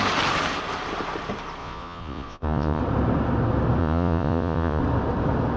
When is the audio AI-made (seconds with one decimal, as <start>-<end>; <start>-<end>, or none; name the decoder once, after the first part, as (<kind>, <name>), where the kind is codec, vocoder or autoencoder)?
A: 1.6-2.8 (vocoder, Vocos); 3.8-4.8

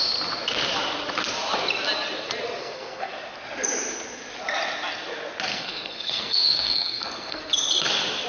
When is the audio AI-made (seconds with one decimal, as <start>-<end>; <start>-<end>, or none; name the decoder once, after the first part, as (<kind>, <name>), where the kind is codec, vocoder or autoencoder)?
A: 2.6-3.1 (codec, SNAC); 5.5-7.4

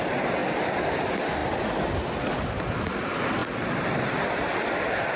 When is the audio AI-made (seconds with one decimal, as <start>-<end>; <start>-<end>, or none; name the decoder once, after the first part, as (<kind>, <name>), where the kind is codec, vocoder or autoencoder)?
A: none

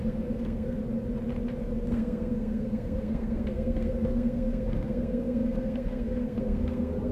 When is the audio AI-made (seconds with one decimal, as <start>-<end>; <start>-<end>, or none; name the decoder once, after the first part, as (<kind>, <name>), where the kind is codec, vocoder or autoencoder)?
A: 0.0-0.8 (codec, SNAC); 1.9-7.1

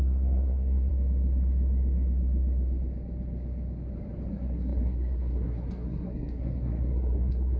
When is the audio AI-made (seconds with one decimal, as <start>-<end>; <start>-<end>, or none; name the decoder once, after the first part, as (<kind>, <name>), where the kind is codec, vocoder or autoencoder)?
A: 0.0-0.9 (codec, SNAC); 4.3-7.6

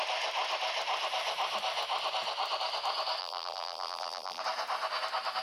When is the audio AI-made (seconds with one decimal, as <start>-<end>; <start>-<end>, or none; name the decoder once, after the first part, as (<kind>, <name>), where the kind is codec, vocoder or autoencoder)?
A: 3.2-4.4 (vocoder, BigVGAN v2)

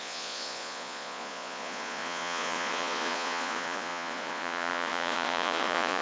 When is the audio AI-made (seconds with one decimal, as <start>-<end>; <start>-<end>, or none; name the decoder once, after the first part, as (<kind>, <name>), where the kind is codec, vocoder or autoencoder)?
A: 0.0-6.0 (vocoder, Vocos)